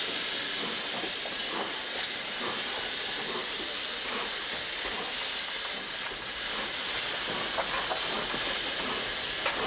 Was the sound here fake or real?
real